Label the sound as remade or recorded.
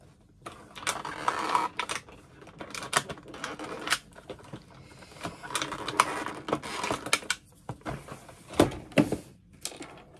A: recorded